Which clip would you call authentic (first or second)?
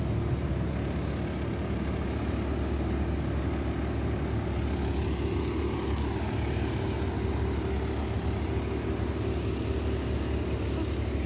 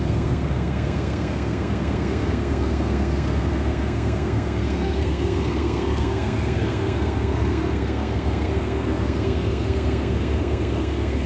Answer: first